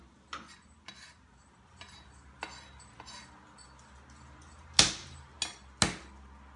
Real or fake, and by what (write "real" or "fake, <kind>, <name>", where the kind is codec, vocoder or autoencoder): real